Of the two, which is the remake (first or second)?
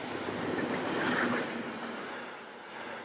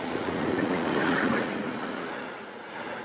second